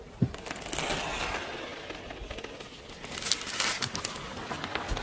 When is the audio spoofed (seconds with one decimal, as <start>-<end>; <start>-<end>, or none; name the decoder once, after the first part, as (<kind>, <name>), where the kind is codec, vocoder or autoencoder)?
none